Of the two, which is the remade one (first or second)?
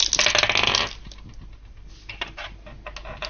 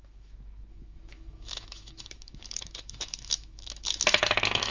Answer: second